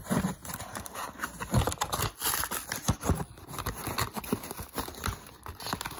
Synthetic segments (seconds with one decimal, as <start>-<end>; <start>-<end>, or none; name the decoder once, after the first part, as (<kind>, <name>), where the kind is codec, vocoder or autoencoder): 0.4-1.0 (vocoder, BigVGAN v2)